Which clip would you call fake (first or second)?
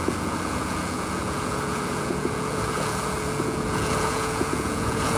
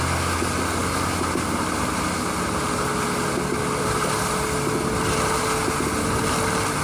first